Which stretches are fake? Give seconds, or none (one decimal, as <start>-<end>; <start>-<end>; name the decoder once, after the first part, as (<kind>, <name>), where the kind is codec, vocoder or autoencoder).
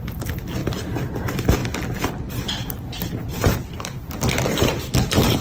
0.6-1.2 (vocoder, BigVGAN v2); 3.2-4.3